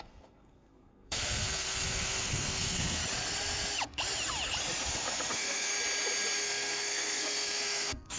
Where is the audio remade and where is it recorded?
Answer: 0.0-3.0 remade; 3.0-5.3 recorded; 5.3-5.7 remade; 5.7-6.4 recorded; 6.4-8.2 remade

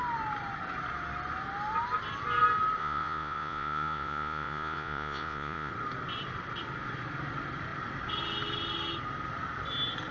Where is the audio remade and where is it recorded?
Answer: 0.0-2.8 recorded; 2.8-5.7 remade; 5.7-10.1 recorded